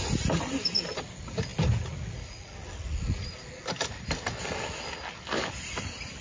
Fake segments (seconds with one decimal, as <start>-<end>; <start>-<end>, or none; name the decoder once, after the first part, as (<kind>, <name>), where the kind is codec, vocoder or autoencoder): none